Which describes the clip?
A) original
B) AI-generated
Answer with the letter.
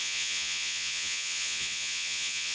B